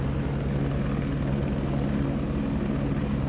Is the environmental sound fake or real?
real